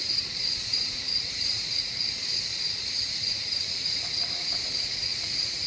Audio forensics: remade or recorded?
remade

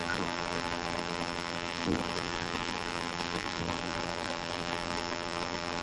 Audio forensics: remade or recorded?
remade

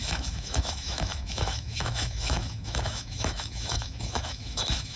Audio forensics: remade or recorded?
remade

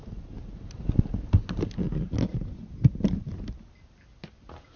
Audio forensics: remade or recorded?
recorded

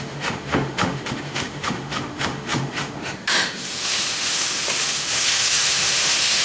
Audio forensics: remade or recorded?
remade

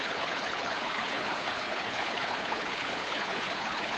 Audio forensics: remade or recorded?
remade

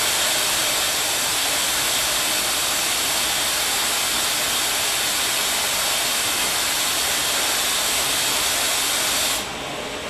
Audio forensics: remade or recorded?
recorded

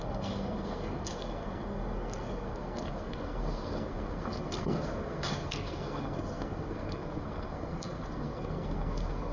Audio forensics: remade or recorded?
remade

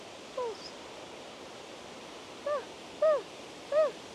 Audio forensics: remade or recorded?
remade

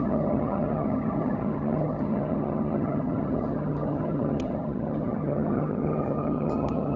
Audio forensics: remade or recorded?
remade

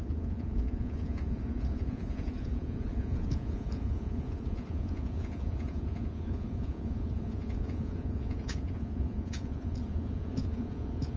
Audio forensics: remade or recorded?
remade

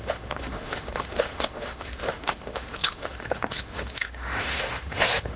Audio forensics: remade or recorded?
remade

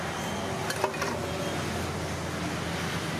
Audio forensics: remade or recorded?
recorded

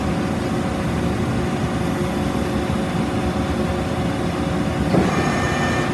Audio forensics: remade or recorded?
recorded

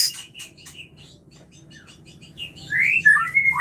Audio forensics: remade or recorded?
remade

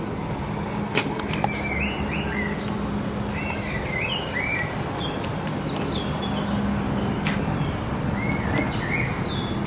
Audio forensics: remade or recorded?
recorded